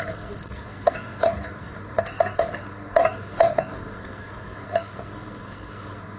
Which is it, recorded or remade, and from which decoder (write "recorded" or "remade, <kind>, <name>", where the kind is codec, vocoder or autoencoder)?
remade, codec, SNAC